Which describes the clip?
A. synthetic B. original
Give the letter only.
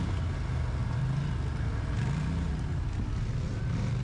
B